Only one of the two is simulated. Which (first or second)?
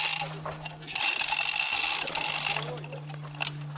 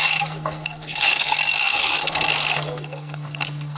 second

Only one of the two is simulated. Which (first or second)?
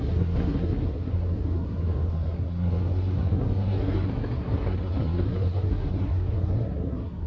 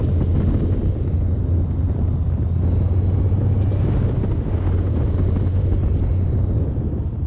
first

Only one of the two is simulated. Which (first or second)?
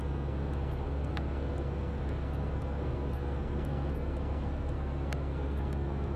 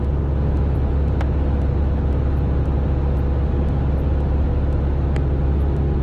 first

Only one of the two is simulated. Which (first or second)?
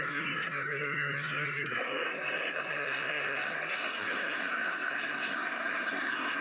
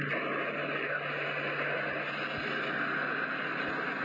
first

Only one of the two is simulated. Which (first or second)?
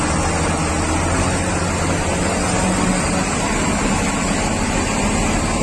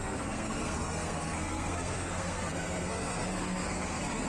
second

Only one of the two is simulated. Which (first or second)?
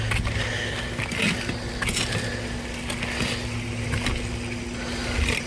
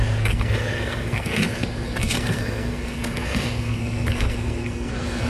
second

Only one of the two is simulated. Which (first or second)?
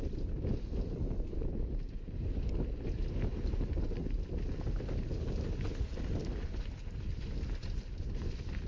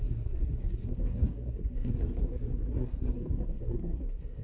second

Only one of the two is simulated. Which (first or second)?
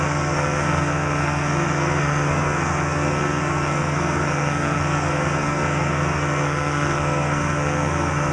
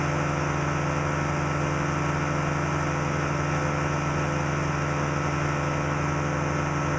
first